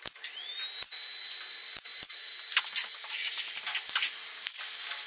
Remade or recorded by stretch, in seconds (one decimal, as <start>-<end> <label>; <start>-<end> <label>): 0.0-5.1 recorded